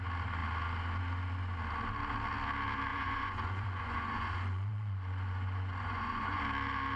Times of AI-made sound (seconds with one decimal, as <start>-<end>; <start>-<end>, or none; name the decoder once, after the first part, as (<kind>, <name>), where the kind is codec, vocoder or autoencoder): 2.9-6.4 (vocoder, Vocos)